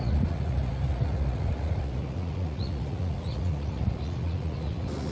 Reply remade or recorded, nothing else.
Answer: remade